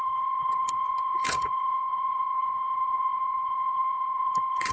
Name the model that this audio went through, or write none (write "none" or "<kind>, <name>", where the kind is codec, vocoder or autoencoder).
codec, HILCodec